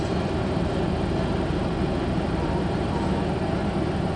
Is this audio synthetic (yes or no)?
yes